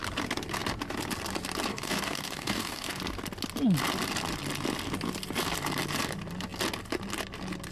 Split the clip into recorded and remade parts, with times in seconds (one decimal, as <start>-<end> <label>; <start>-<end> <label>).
0.0-1.7 recorded; 1.7-3.0 remade; 3.0-7.7 recorded